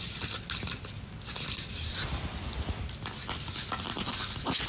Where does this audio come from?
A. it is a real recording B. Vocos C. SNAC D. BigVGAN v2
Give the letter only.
A